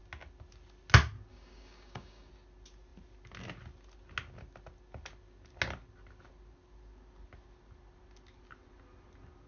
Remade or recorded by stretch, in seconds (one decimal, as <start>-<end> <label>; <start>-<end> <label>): 0.0-1.3 recorded; 1.3-2.3 remade; 2.3-9.5 recorded